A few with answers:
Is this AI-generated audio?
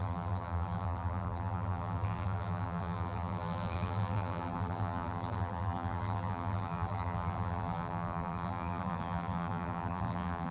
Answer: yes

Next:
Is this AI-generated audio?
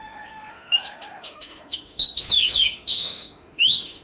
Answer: yes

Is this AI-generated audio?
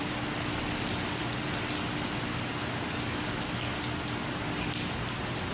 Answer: no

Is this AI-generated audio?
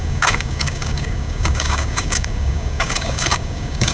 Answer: yes